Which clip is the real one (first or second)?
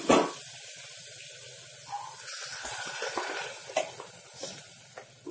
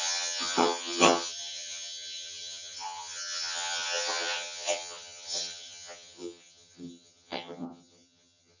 first